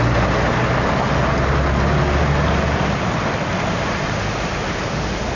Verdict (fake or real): real